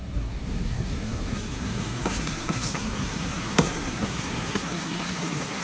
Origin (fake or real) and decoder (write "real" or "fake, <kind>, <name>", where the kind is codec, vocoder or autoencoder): fake, codec, SNAC